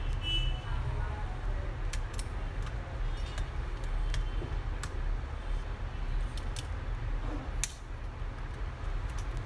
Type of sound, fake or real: real